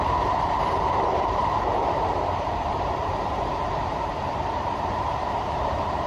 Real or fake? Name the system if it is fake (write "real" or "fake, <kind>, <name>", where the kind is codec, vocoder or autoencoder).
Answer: fake, vocoder, BigVGAN v2